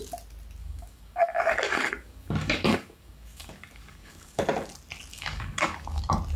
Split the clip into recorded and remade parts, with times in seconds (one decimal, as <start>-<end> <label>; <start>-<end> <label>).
0.0-0.6 recorded; 0.6-4.4 remade; 4.4-5.1 recorded; 5.1-6.0 remade; 6.0-6.4 recorded